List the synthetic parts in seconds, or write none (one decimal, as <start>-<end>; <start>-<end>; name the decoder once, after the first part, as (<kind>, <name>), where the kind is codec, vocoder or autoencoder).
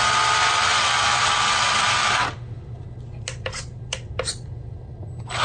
none